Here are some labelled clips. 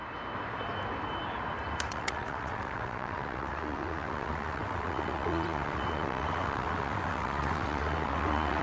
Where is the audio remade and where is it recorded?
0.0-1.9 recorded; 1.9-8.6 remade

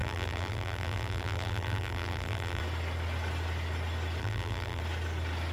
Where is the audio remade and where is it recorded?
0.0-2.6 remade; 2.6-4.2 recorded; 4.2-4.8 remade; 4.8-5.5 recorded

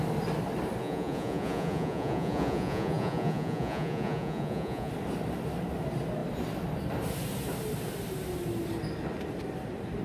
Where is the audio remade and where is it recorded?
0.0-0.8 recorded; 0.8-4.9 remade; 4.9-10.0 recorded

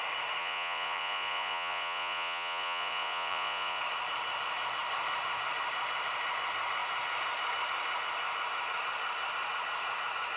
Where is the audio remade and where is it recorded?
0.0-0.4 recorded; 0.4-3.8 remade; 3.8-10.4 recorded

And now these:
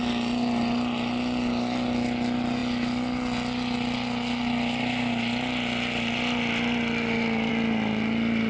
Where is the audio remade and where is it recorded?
0.0-8.5 recorded